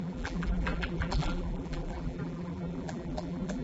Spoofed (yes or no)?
yes